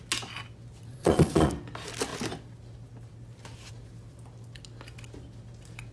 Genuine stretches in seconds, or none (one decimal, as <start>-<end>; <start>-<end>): 0.0-0.9; 1.5-5.9